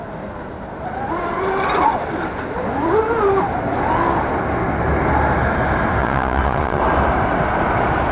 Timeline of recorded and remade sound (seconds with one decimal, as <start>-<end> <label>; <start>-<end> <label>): 0.0-6.0 recorded; 6.0-6.8 remade; 6.8-8.1 recorded